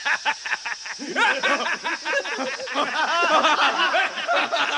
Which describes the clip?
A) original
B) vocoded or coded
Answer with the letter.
A